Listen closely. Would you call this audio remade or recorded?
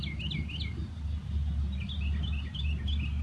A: recorded